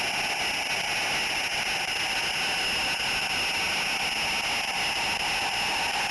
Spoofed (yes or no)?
no